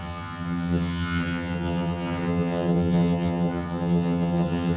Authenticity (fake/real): fake